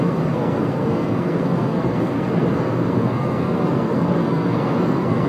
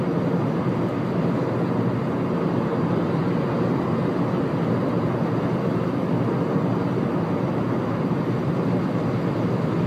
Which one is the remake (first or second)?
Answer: first